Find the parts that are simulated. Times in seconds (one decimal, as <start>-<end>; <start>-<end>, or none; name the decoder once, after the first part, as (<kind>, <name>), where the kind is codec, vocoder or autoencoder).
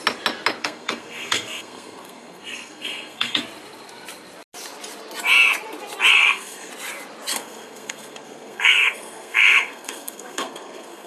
0.6-3.4 (codec, SNAC); 6.1-6.7; 7.3-11.1